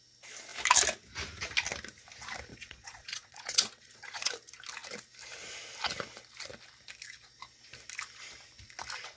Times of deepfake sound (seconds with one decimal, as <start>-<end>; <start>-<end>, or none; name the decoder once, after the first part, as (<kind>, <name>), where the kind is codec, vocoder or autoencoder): 2.5-4.3 (vocoder, Vocos)